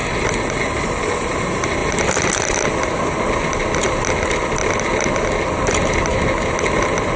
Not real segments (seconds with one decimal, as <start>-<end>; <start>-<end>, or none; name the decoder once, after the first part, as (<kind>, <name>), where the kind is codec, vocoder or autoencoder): 1.8-2.3 (vocoder, BigVGAN v2)